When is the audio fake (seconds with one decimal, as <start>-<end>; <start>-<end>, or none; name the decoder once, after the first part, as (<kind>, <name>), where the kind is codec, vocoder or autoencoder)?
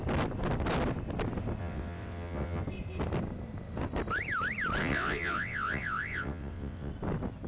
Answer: 1.6-2.6 (vocoder, WaveNeXt); 4.8-6.9